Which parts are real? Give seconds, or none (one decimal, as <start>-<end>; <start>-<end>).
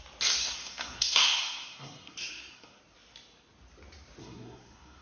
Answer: 0.0-0.4; 2.8-4.2